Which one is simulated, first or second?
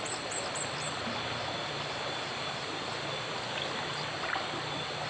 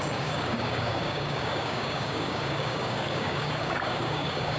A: second